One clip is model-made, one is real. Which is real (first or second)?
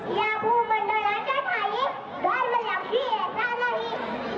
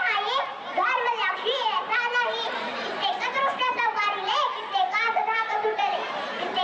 first